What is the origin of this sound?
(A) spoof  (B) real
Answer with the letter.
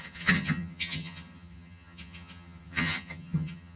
A